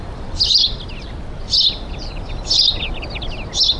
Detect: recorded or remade recorded